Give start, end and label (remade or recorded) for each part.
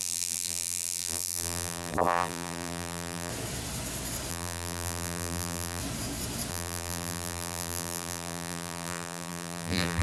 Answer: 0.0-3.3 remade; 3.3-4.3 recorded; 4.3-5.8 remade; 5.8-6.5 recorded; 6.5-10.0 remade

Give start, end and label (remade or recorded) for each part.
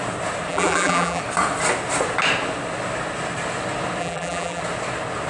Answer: 0.0-0.5 recorded; 0.5-1.2 remade; 1.2-4.0 recorded; 4.0-4.6 remade; 4.6-5.3 recorded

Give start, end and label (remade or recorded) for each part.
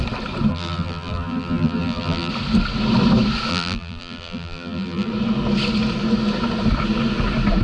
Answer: 0.0-0.5 recorded; 0.5-2.3 remade; 2.3-3.5 recorded; 3.5-5.1 remade; 5.1-7.6 recorded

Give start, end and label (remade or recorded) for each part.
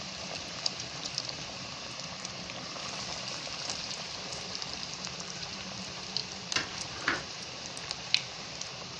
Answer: 0.0-9.0 remade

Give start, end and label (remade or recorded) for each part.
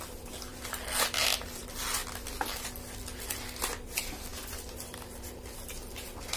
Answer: 0.0-6.4 recorded